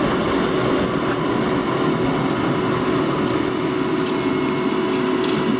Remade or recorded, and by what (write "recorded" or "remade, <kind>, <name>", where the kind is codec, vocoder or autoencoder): recorded